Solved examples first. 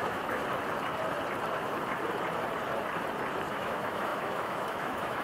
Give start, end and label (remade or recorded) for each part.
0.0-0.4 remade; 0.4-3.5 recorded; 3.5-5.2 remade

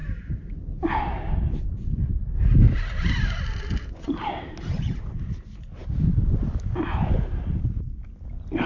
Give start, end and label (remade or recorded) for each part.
0.0-8.7 recorded

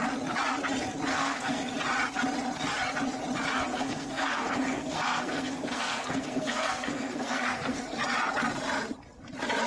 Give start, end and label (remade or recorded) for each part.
0.0-1.1 recorded; 1.1-1.7 remade; 1.7-3.7 recorded; 3.7-7.8 remade; 7.8-9.7 recorded

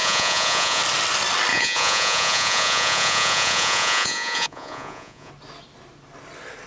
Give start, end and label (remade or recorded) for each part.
0.0-0.8 remade; 0.8-1.5 recorded; 1.5-5.3 remade; 5.3-6.7 recorded

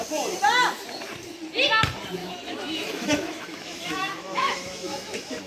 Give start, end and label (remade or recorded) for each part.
0.0-2.2 recorded; 2.2-5.5 remade

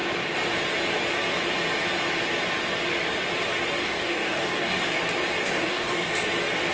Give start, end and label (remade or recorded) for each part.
0.0-3.8 recorded; 3.8-5.0 remade; 5.0-5.4 recorded; 5.4-6.1 remade; 6.1-6.7 recorded

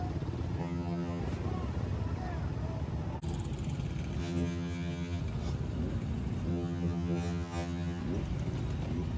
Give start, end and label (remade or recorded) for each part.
0.0-0.6 recorded; 0.6-1.2 remade; 1.2-4.2 recorded; 4.2-5.2 remade; 5.2-6.5 recorded; 6.5-8.0 remade; 8.0-9.2 recorded

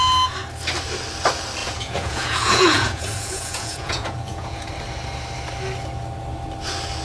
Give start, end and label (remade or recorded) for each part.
0.0-1.6 recorded; 1.6-4.7 remade; 4.7-7.0 recorded